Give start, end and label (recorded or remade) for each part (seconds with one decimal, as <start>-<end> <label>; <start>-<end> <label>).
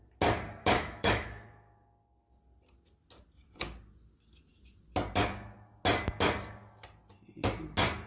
0.0-0.6 recorded; 0.6-2.4 remade; 2.4-8.1 recorded